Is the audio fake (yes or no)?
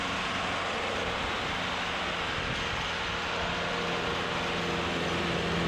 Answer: no